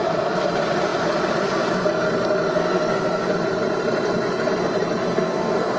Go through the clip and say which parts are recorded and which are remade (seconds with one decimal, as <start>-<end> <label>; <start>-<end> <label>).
0.0-2.5 recorded; 2.5-3.3 remade; 3.3-5.0 recorded; 5.0-5.8 remade